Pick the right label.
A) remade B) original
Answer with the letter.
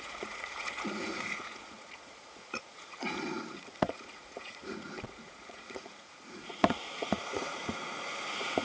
A